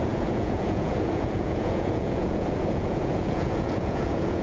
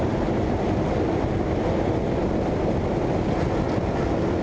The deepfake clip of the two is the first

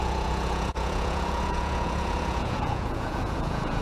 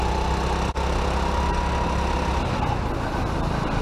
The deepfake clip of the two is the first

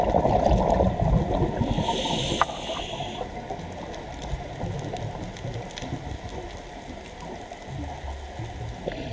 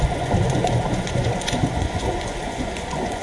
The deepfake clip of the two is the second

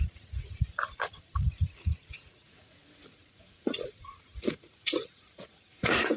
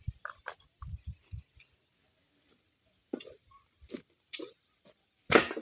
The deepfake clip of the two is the first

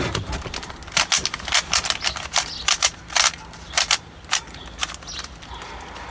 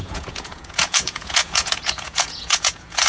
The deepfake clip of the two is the second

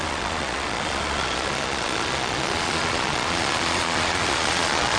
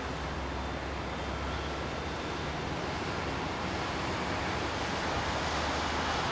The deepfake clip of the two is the first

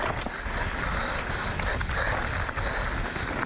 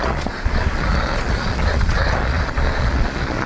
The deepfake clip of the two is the second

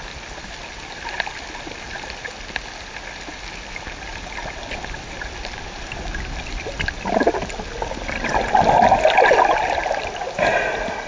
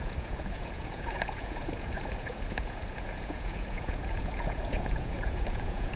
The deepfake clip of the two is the second